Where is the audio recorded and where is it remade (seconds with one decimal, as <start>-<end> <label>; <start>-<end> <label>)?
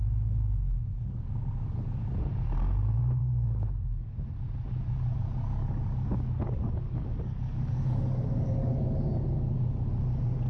0.0-0.9 recorded; 0.9-1.4 remade; 1.4-3.2 recorded; 3.2-4.3 remade; 4.3-6.1 recorded; 6.1-9.9 remade; 9.9-10.5 recorded